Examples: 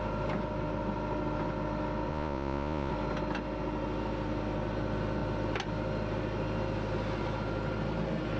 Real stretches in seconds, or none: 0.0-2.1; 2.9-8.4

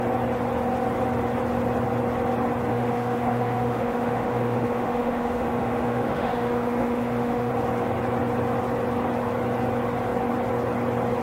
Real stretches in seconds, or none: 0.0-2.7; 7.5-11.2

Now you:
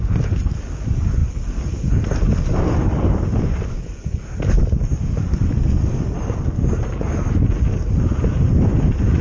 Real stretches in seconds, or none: 0.0-9.2